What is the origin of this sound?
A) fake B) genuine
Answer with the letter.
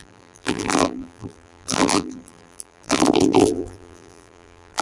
A